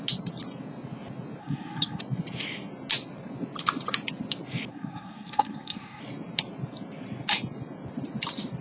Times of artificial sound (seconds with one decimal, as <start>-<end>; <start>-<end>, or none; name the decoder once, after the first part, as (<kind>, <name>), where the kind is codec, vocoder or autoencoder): 1.4-2.0 (codec, SNAC); 4.7-6.0